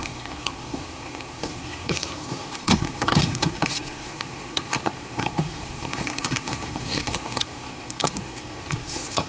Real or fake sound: fake